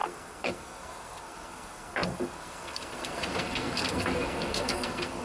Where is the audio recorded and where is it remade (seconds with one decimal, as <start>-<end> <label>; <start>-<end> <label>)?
0.0-5.2 remade

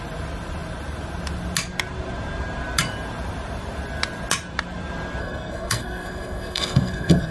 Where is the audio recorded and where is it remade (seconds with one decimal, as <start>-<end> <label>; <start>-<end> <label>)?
0.0-5.2 recorded; 5.2-7.3 remade

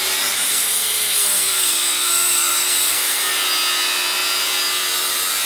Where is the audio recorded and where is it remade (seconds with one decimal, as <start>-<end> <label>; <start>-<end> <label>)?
0.0-0.5 recorded; 0.5-3.2 remade; 3.2-5.5 recorded

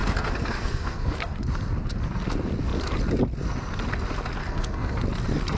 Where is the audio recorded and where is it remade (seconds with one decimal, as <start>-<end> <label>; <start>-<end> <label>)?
0.0-1.5 remade; 1.5-4.4 recorded; 4.4-5.0 remade; 5.0-5.6 recorded

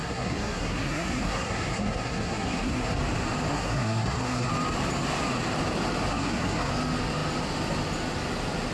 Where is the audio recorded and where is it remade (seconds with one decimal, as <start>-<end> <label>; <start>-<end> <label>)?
0.0-3.0 remade; 3.0-3.5 recorded; 3.5-4.5 remade; 4.5-6.1 recorded; 6.1-6.7 remade; 6.7-8.7 recorded